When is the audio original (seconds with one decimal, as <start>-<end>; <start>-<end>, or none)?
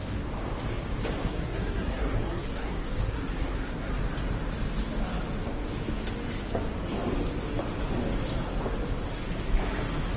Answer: 0.0-1.2; 3.9-10.2